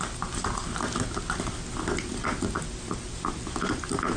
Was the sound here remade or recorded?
recorded